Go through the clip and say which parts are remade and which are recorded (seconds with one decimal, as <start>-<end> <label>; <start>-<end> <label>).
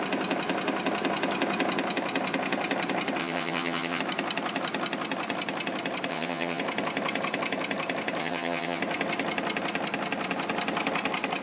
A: 0.0-3.2 recorded; 3.2-4.0 remade; 4.0-6.1 recorded; 6.1-6.6 remade; 6.6-8.2 recorded; 8.2-8.8 remade; 8.8-11.4 recorded